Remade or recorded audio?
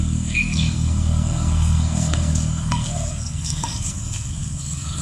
remade